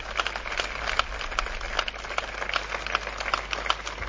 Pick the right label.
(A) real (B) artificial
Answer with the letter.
A